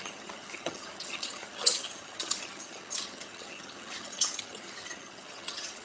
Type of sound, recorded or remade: remade